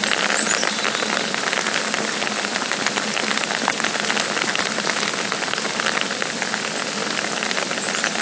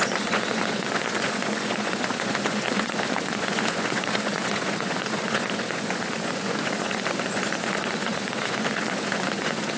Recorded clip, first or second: first